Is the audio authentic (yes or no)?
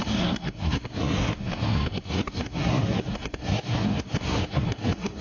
no